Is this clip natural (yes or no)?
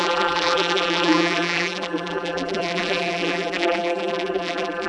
no